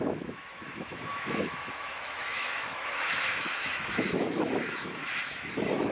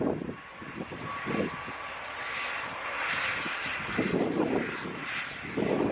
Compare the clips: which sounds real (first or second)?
second